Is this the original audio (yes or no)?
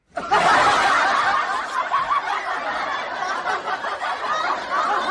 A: yes